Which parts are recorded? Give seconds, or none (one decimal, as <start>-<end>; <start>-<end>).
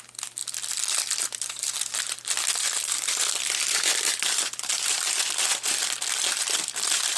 0.0-0.4; 4.7-7.2